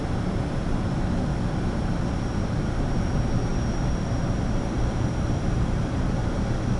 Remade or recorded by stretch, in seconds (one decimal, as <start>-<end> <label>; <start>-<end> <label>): 0.0-3.5 recorded; 3.5-6.8 remade